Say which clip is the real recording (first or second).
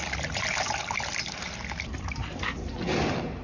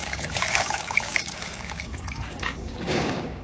first